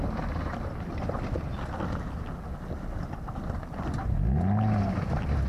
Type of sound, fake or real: real